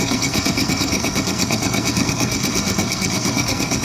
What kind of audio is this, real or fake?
fake